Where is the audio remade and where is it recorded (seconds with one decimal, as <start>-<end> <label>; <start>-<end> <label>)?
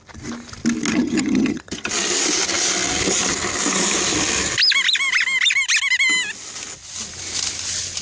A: 0.0-0.9 recorded; 0.9-1.9 remade; 1.9-8.0 recorded